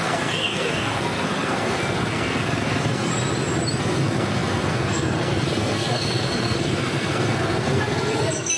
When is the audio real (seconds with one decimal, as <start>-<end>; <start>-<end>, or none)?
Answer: 3.1-3.8